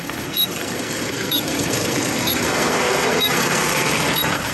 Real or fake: fake